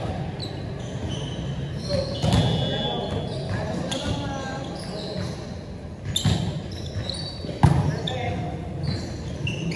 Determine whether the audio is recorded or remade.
recorded